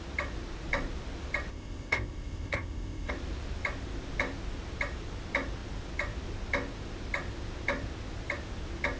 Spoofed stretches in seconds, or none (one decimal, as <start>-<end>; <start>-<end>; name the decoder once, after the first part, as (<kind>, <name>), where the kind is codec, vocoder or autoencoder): 1.5-3.1 (codec, ZipCodec)